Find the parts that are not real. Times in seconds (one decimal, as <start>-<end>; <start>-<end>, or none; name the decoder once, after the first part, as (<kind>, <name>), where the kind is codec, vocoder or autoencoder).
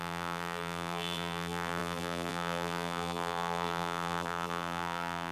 0.0-5.3 (vocoder, BigVGAN v2)